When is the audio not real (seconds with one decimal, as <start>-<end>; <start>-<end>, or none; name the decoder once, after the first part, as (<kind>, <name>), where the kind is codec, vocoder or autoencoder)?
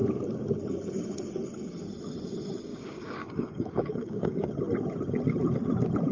2.7-4.5 (codec, DAC)